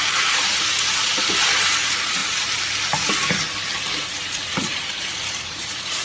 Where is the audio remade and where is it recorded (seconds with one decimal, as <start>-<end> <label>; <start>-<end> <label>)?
0.0-1.1 remade; 1.1-1.8 recorded; 1.8-2.2 remade; 2.2-4.3 recorded; 4.3-6.0 remade